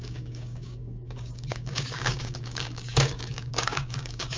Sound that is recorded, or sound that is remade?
remade